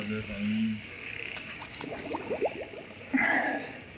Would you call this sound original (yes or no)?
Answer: no